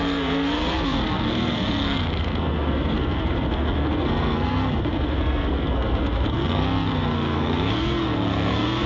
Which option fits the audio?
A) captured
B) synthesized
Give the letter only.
B